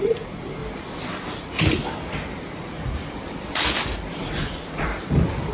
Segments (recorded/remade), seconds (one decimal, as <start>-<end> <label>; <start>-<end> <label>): 0.0-0.6 remade; 0.6-1.2 recorded; 1.2-1.8 remade; 1.8-2.5 recorded; 2.5-3.2 remade; 3.2-4.2 recorded; 4.2-4.9 remade; 4.9-5.5 recorded